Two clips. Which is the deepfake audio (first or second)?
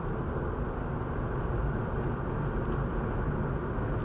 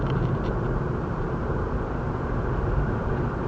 second